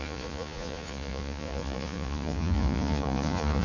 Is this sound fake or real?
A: fake